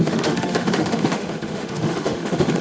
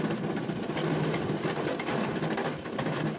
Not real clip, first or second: first